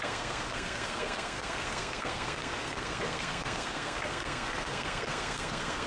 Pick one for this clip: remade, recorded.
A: remade